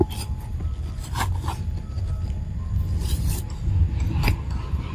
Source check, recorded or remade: recorded